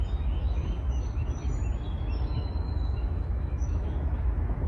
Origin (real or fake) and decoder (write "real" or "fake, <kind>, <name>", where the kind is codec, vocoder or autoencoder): fake, autoencoder, DAC-VAE